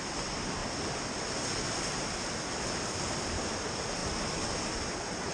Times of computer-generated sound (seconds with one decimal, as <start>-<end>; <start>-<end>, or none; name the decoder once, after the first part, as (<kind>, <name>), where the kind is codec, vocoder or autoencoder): 0.6-1.9 (vocoder, BigVGAN v2)

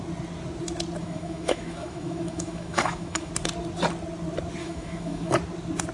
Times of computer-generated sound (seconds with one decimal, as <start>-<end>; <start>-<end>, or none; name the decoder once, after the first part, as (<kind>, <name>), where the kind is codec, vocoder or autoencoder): 1.0-3.3 (autoencoder, DAC-VAE); 4.6-5.3

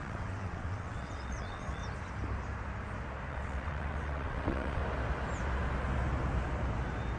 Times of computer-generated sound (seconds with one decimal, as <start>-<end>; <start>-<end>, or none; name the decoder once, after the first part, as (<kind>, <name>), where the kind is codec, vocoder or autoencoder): 0.0-1.8 (vocoder, WaveNeXt); 3.3-4.8

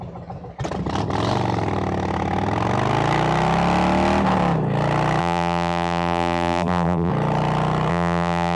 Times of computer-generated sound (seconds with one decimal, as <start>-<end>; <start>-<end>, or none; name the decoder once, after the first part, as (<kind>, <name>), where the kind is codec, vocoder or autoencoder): 5.2-7.1 (vocoder, BigVGAN v2); 7.9-8.6

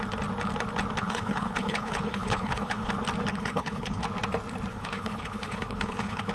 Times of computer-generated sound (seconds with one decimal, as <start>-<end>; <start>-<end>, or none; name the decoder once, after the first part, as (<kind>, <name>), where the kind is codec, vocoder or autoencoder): 1.0-2.9 (codec, HILCodec); 3.3-4.0; 4.7-6.3